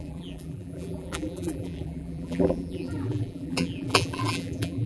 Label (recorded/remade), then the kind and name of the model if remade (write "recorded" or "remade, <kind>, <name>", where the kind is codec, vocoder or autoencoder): remade, vocoder, BigVGAN v2